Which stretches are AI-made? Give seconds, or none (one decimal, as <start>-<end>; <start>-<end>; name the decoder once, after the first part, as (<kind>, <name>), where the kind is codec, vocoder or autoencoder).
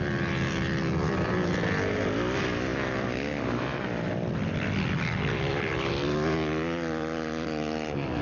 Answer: none